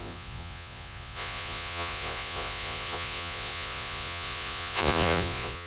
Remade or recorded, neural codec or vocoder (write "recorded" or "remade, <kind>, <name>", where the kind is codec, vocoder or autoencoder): remade, vocoder, Vocos